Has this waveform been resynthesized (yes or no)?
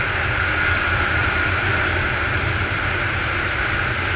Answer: no